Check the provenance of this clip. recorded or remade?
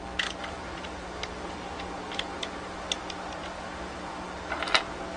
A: recorded